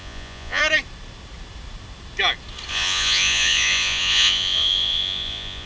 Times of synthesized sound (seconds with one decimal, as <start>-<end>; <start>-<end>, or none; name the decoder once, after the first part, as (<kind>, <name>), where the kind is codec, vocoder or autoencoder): 0.0-0.6 (vocoder, Vocos); 2.7-5.7